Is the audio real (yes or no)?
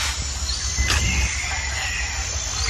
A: yes